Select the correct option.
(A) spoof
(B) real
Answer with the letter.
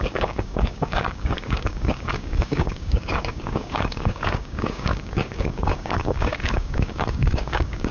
A